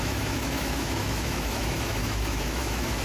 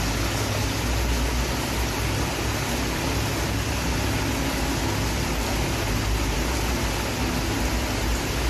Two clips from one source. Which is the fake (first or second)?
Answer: first